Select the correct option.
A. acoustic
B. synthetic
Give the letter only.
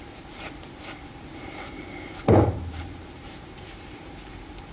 B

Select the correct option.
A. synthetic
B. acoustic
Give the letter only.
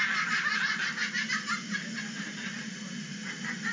B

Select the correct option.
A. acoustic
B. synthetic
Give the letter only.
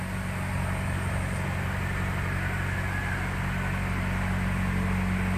A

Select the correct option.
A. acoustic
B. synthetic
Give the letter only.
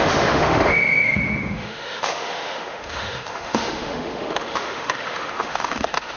B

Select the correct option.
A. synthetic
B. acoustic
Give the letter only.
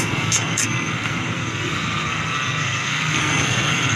A